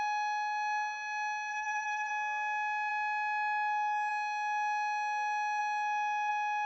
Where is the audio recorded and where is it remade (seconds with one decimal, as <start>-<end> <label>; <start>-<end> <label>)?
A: 0.0-1.5 recorded; 1.5-2.1 remade; 2.1-6.7 recorded